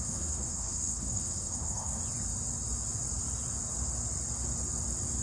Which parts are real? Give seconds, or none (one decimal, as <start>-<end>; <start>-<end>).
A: 2.0-5.2